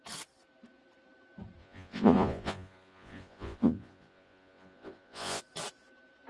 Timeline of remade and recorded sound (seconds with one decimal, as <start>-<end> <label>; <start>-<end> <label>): 0.0-1.6 recorded; 1.6-5.4 remade; 5.4-6.3 recorded